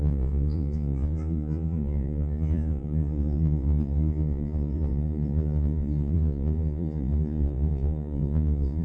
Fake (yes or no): yes